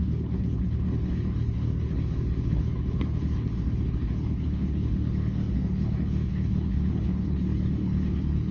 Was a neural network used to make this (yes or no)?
yes